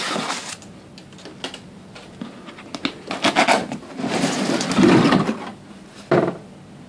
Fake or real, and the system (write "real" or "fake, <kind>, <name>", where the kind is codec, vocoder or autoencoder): real